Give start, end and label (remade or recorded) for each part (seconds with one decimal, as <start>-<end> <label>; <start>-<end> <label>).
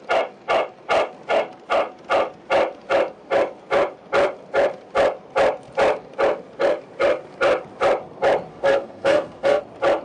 0.0-8.5 recorded; 8.5-9.6 remade; 9.6-10.0 recorded